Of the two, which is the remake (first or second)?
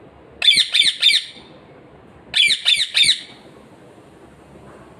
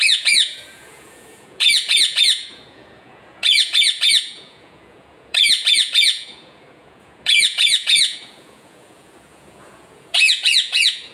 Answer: second